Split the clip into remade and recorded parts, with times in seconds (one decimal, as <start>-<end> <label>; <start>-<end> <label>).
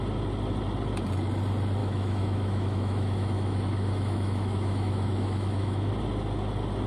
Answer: 0.0-1.8 recorded; 1.8-5.9 remade; 5.9-6.9 recorded